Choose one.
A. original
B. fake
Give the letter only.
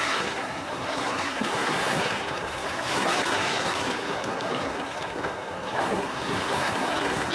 B